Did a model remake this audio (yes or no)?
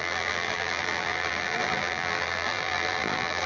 yes